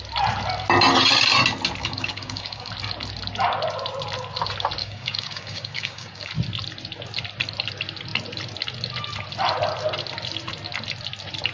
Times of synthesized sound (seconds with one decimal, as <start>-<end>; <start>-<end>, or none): 1.8-2.7; 4.8-6.3